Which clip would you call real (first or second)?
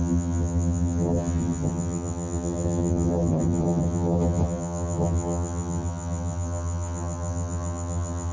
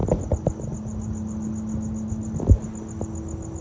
second